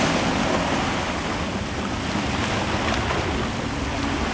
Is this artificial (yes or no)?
no